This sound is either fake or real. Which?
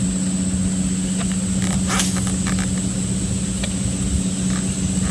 real